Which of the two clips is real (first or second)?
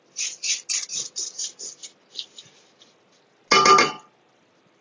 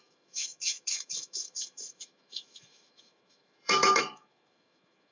first